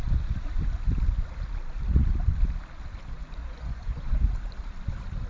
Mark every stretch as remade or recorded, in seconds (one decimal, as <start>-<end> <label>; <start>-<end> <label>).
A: 0.0-3.4 recorded; 3.4-4.3 remade; 4.3-5.3 recorded